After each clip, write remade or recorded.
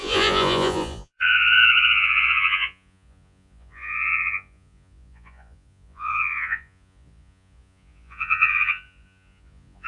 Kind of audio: remade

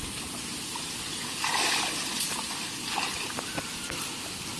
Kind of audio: recorded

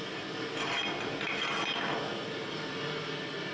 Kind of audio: recorded